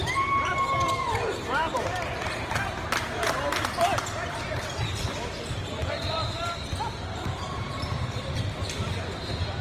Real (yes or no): no